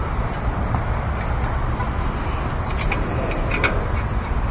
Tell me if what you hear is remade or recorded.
recorded